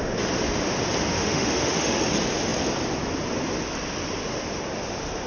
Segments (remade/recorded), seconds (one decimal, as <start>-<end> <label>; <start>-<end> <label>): 0.0-1.1 recorded; 1.1-2.0 remade; 2.0-5.3 recorded